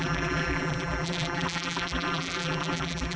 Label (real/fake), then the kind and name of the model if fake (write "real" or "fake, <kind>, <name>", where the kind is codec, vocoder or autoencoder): fake, vocoder, BigVGAN v2